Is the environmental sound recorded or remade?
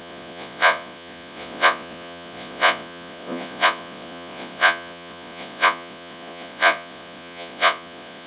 remade